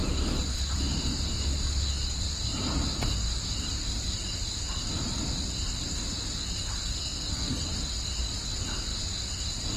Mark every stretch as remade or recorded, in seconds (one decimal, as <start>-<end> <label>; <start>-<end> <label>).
0.0-6.8 recorded; 6.8-7.7 remade; 7.7-9.8 recorded